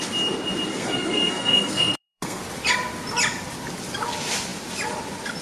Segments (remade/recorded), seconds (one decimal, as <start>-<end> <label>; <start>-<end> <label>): 0.0-0.7 recorded; 0.7-2.4 remade; 2.4-5.4 recorded